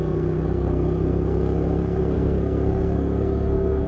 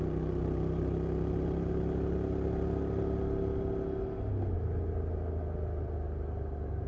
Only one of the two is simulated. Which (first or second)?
first